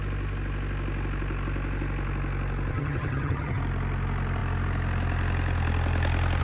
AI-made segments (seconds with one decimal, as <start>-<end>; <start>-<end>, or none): 2.7-3.6